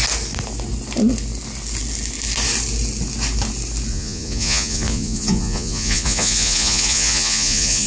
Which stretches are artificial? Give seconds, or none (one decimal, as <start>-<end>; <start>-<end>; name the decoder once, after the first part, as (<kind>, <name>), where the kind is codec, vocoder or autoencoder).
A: 3.9-7.9 (vocoder, Vocos)